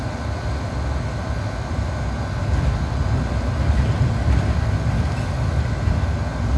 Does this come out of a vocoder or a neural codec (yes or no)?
no